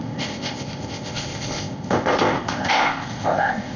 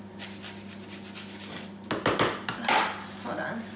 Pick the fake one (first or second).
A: first